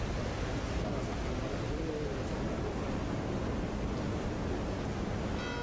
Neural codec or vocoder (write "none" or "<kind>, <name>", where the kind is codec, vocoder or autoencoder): none